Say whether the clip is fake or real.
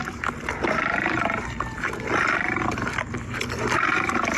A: real